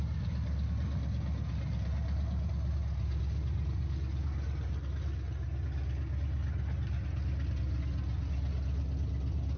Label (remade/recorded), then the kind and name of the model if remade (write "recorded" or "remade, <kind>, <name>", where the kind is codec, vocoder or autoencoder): recorded